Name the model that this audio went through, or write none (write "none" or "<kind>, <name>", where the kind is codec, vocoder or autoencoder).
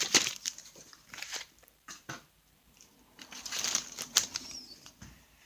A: vocoder, BigVGAN v2